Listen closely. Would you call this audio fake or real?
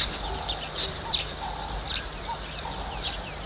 real